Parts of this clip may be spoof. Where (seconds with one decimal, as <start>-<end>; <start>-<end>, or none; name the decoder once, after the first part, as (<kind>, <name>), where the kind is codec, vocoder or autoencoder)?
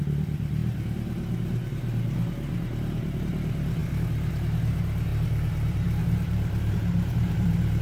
5.1-7.8 (vocoder, BigVGAN v2)